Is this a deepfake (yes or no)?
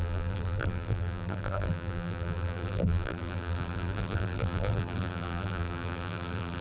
yes